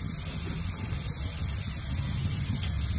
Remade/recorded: recorded